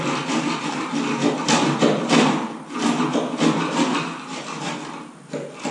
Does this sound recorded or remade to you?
recorded